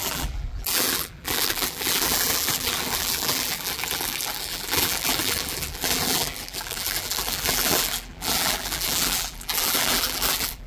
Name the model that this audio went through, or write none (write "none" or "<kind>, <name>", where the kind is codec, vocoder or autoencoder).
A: vocoder, BigVGAN v2